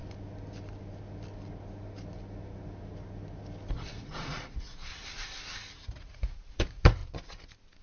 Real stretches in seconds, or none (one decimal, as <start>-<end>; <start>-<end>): 0.0-3.7; 4.9-6.0; 7.0-7.8